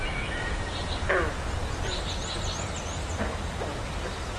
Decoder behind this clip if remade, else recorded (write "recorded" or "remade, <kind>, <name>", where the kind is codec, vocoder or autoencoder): recorded